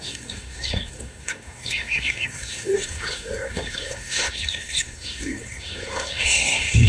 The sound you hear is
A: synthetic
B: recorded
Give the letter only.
A